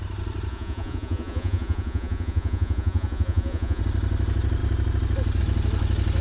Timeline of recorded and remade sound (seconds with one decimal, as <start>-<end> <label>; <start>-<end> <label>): 0.0-0.5 recorded; 0.5-3.8 remade; 3.8-6.2 recorded